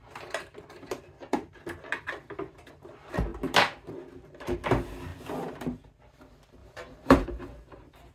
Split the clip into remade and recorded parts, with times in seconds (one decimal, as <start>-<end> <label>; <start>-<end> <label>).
0.0-6.6 recorded; 6.6-8.1 remade